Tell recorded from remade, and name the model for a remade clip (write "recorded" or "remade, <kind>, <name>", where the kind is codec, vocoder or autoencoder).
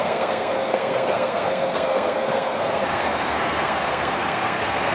remade, codec, SNAC